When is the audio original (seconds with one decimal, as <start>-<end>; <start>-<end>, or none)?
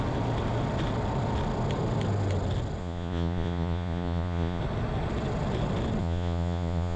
0.0-2.8; 4.6-6.0